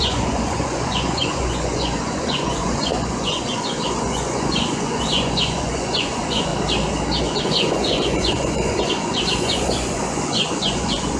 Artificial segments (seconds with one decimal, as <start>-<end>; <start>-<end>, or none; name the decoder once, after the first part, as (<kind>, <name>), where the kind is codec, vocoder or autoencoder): 0.0-6.5 (vocoder, Vocos); 7.2-11.2